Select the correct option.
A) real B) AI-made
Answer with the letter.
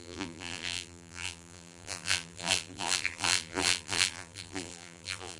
B